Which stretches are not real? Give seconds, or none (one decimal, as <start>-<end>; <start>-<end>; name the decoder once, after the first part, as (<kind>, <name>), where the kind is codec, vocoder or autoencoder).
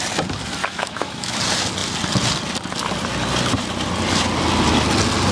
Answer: 0.6-1.4 (autoencoder, DAC-VAE)